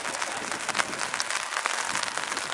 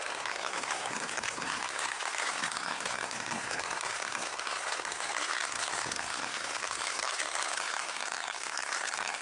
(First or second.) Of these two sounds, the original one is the first